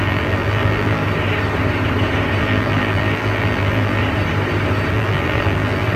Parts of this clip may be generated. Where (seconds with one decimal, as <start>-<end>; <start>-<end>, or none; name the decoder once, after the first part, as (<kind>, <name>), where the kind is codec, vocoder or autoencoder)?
0.0-1.0 (vocoder, BigVGAN v2); 2.4-4.0; 4.9-6.0